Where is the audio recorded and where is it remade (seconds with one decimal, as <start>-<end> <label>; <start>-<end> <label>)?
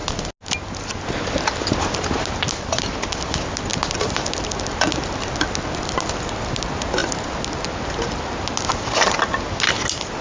0.0-10.2 recorded